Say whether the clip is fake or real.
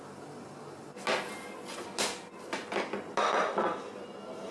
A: real